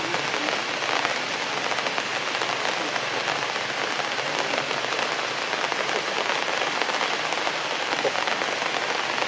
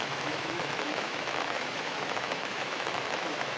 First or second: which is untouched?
first